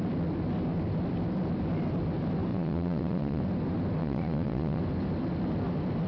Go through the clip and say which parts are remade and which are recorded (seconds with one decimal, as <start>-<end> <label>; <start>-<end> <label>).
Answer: 0.0-2.5 recorded; 2.5-3.4 remade; 3.4-4.0 recorded; 4.0-4.8 remade; 4.8-6.1 recorded